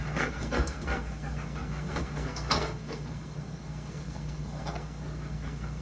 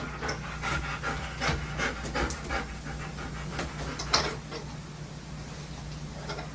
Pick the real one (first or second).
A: second